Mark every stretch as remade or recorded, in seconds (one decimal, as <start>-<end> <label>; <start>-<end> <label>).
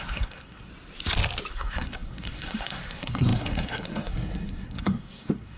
0.0-0.7 remade; 0.7-1.5 recorded; 1.5-5.6 remade